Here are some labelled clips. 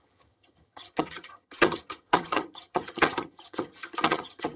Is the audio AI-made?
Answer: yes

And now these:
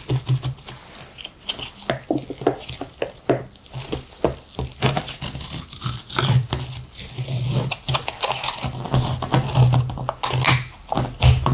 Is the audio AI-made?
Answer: no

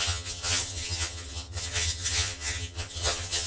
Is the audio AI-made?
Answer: yes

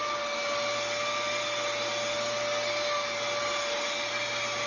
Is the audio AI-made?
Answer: no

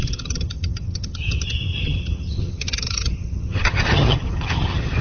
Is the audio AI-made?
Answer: yes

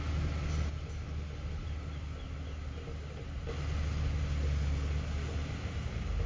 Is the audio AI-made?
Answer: no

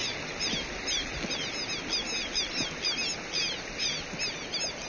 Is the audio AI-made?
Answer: no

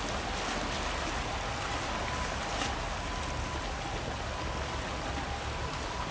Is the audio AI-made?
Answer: no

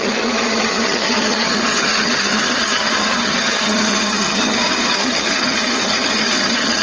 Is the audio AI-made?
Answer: yes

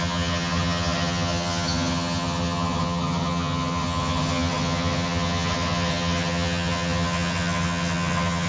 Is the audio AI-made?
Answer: yes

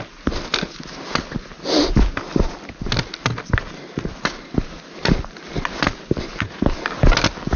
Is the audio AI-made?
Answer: no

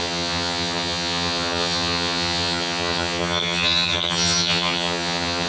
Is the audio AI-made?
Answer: yes